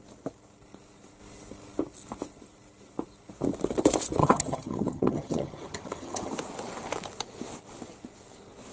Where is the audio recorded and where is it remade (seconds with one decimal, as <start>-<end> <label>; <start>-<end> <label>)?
0.0-4.2 recorded; 4.2-6.3 remade; 6.3-8.7 recorded